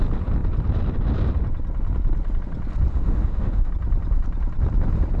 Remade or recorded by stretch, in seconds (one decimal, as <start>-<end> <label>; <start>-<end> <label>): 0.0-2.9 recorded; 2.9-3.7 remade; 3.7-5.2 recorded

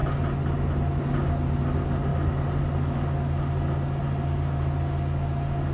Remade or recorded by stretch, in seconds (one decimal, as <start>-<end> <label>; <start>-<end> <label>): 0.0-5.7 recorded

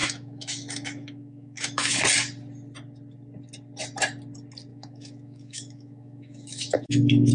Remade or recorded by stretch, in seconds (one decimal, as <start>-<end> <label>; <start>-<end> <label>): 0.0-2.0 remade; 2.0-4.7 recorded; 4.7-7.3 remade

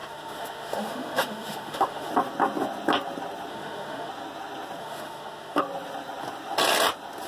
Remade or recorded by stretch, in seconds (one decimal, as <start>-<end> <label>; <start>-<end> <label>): 0.0-2.1 remade; 2.1-3.5 recorded; 3.5-4.1 remade; 4.1-4.8 recorded; 4.8-5.6 remade; 5.6-7.3 recorded

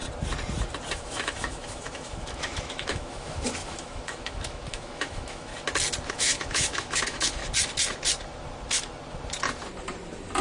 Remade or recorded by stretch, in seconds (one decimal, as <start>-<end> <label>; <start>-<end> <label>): 0.0-0.9 recorded; 0.9-5.5 remade; 5.5-6.1 recorded; 6.1-7.4 remade; 7.4-10.4 recorded